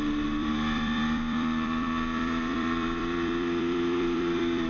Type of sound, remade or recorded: remade